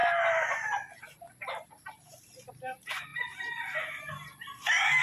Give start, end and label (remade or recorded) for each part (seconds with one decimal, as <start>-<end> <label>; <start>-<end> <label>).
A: 0.0-2.5 recorded; 2.5-3.1 remade; 3.1-4.1 recorded; 4.1-5.0 remade